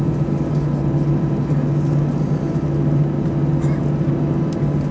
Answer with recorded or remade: recorded